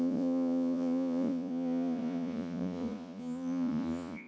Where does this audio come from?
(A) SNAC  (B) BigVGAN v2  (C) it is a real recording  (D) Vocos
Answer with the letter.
D